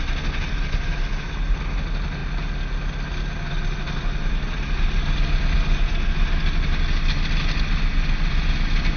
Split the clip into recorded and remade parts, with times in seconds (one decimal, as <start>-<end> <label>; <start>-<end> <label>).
0.0-9.0 recorded